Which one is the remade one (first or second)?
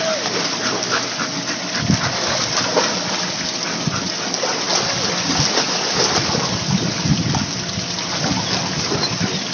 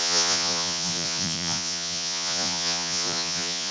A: second